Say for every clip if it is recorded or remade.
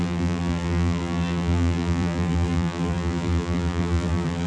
remade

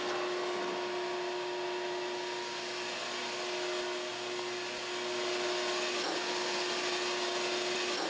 recorded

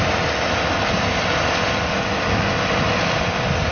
recorded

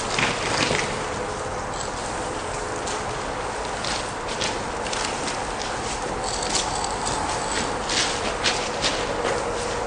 recorded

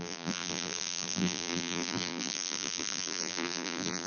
remade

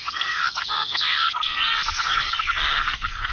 remade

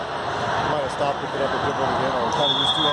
recorded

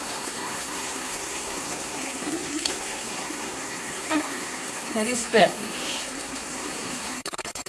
remade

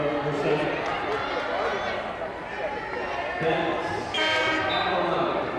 recorded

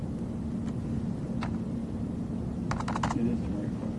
recorded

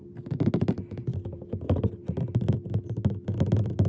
recorded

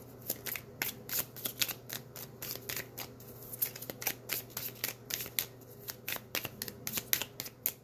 recorded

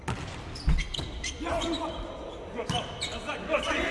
recorded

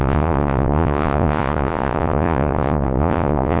remade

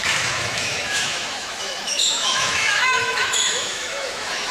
remade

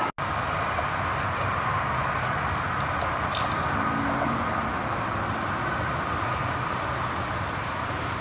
recorded